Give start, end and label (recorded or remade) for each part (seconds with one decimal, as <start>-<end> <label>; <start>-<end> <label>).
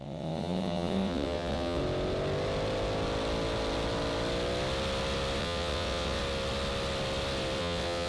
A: 0.0-1.8 remade; 1.8-5.4 recorded; 5.4-6.2 remade; 6.2-7.6 recorded; 7.6-8.1 remade